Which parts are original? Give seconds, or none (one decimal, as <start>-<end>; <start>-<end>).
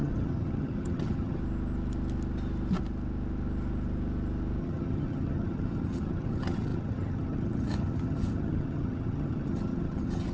1.4-4.6